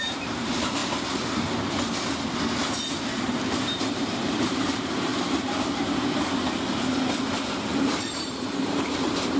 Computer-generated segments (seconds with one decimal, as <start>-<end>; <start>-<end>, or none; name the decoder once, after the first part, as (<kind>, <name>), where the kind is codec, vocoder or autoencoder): 0.0-0.8 (vocoder, BigVGAN v2); 3.1-5.1; 7.3-9.4